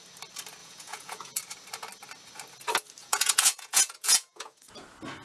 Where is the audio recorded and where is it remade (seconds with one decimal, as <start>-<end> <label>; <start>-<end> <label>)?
0.0-0.6 recorded; 0.6-1.4 remade; 1.4-3.0 recorded; 3.0-4.7 remade; 4.7-5.2 recorded